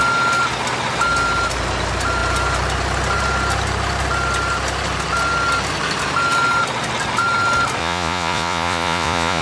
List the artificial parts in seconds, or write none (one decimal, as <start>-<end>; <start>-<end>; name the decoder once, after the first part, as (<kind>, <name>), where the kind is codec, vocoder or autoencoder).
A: 7.8-9.4 (vocoder, Vocos)